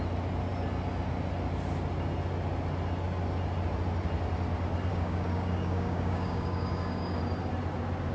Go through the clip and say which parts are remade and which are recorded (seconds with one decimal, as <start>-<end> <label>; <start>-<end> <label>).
0.0-4.9 recorded; 4.9-7.2 remade; 7.2-8.1 recorded